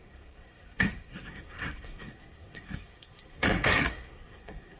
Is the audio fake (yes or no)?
yes